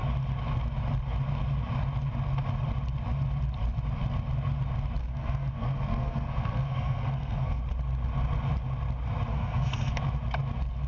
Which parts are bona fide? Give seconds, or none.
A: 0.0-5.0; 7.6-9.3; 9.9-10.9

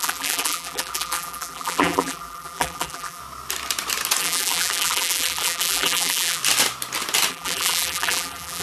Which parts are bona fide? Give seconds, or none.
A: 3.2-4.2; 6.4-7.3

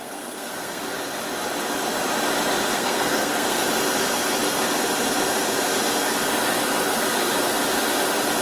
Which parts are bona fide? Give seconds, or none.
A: 0.8-2.7; 3.6-8.4

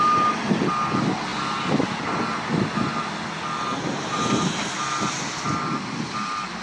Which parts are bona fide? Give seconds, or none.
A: 0.0-6.6

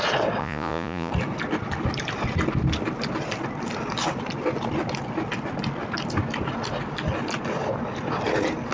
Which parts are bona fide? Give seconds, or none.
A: 0.0-0.4; 1.1-8.7

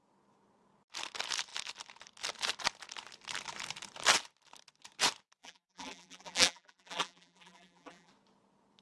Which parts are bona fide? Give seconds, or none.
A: 0.0-5.4; 8.1-8.8

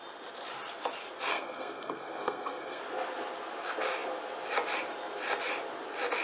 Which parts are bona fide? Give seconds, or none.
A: 0.0-1.3; 2.8-6.2